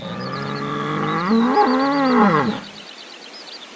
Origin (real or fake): real